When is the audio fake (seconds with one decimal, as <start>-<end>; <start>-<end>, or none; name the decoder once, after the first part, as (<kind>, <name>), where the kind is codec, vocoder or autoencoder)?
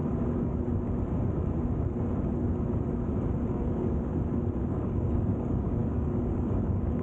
3.5-4.1 (codec, DAC); 4.7-7.0